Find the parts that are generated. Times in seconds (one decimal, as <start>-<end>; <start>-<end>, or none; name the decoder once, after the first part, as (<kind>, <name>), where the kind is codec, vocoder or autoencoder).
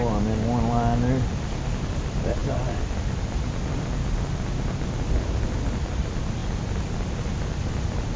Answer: none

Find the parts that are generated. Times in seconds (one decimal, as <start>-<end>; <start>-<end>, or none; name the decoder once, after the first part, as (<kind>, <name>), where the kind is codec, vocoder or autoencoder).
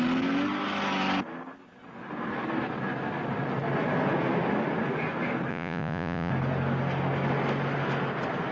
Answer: 5.5-6.3 (vocoder, Vocos)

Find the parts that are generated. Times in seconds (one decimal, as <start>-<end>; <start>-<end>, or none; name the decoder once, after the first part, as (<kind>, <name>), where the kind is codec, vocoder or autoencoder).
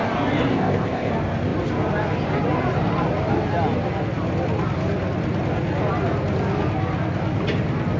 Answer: 0.5-1.1 (codec, ZipCodec)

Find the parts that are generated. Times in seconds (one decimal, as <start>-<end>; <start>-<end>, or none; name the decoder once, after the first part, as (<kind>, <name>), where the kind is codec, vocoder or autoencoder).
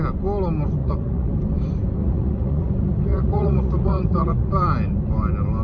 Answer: 0.8-1.3 (vocoder, Vocos); 2.0-2.7; 3.1-4.5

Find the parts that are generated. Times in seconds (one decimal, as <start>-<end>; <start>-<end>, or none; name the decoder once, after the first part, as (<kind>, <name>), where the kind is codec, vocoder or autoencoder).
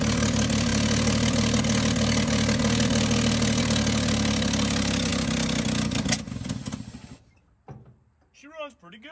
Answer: none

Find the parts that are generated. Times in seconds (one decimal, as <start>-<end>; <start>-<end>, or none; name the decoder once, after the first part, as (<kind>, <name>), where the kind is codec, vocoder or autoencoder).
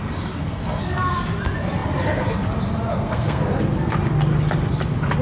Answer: 0.4-1.2 (codec, SNAC); 2.9-3.4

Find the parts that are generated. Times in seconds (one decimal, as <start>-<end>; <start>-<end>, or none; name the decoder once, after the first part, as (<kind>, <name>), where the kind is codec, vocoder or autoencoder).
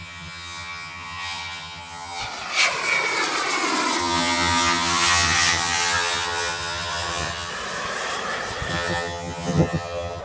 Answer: 0.0-2.2 (vocoder, HiFi-GAN); 4.0-7.5; 8.7-10.2